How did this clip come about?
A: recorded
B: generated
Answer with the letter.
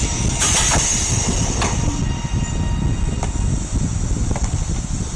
A